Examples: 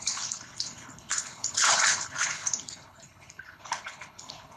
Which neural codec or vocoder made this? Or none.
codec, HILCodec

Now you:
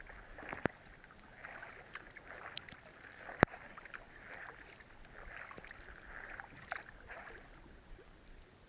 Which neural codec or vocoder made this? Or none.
none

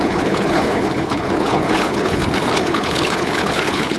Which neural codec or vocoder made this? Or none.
codec, HILCodec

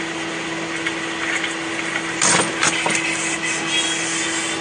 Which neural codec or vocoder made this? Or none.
none